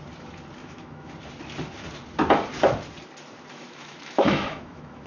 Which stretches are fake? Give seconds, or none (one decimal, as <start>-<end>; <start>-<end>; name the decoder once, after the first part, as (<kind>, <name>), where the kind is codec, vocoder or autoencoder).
0.6-1.1 (autoencoder, DAC-VAE); 3.5-5.1